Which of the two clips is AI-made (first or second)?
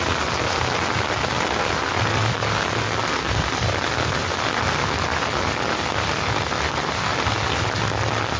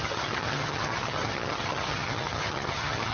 second